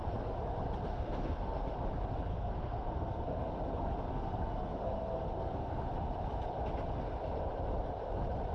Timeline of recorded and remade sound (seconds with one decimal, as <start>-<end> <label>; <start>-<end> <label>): 0.0-0.9 recorded; 0.9-1.7 remade; 1.7-2.3 recorded; 2.3-3.5 remade; 3.5-4.1 recorded; 4.1-5.8 remade; 5.8-8.5 recorded